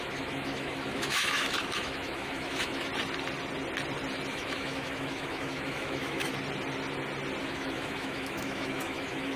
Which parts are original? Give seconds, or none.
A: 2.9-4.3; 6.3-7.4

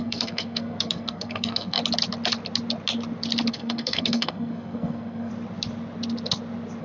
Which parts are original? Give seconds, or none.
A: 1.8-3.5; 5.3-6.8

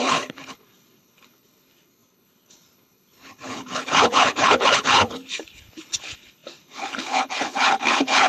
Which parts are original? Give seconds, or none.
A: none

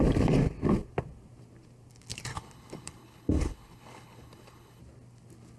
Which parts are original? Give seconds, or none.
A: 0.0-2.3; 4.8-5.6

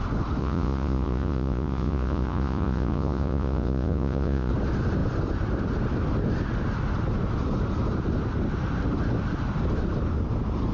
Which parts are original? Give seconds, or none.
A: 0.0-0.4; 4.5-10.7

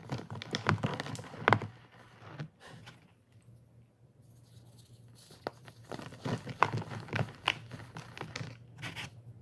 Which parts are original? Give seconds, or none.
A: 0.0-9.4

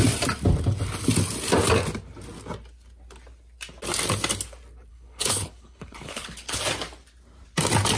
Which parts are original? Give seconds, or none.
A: 0.0-4.9; 6.6-8.0

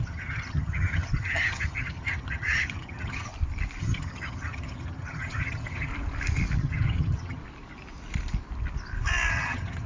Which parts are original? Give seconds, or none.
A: 3.3-3.8; 5.9-6.6; 7.4-9.3